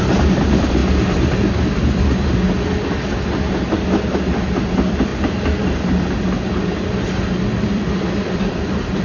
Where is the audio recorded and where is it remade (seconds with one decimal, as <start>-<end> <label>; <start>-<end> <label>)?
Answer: 0.0-0.8 remade; 0.8-3.7 recorded; 3.7-5.1 remade; 5.1-7.1 recorded; 7.1-9.0 remade